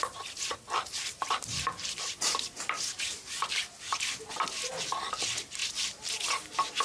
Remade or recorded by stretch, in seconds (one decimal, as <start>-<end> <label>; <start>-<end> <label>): 0.0-6.8 remade

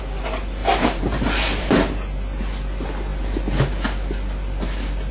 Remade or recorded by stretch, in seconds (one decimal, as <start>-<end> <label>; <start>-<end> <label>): 0.0-0.6 recorded; 0.6-1.7 remade; 1.7-5.1 recorded